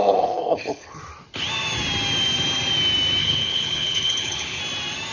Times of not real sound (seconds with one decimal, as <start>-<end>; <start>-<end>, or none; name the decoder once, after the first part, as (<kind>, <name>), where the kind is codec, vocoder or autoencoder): 0.0-1.0 (codec, HILCodec); 3.2-4.6